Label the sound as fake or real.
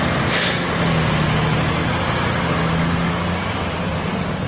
real